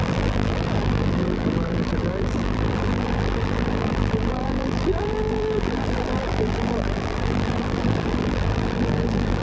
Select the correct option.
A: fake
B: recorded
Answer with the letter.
A